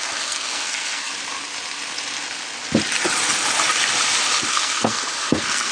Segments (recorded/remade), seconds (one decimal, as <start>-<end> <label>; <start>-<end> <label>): 0.0-1.1 remade; 1.1-4.5 recorded; 4.5-5.7 remade